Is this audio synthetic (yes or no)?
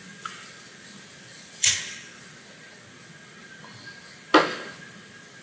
no